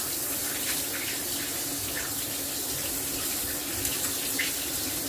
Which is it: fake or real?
real